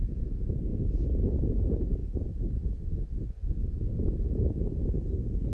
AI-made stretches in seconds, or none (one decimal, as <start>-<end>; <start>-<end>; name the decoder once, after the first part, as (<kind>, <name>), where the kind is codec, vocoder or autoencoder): 0.0-0.7 (vocoder, BigVGAN v2); 1.5-2.0